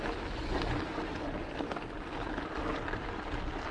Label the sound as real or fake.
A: real